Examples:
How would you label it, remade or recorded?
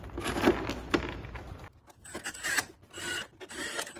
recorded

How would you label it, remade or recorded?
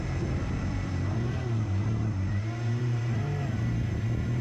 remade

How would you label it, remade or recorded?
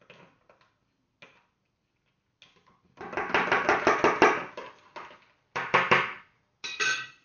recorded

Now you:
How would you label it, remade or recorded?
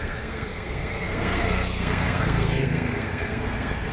remade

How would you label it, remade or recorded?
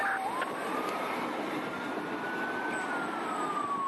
recorded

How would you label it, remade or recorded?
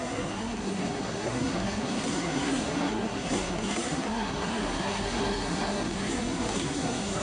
remade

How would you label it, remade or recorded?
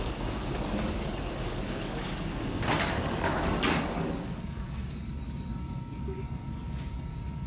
remade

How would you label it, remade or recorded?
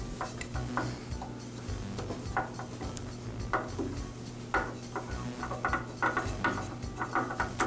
recorded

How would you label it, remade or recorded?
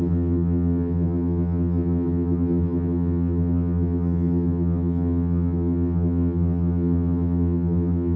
remade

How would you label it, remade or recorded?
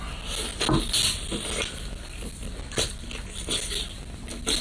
recorded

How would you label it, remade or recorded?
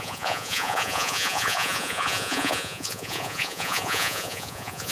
remade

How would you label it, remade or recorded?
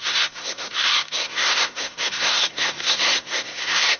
remade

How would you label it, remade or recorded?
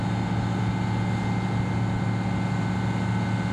recorded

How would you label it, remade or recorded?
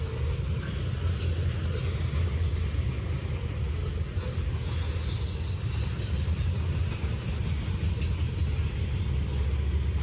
recorded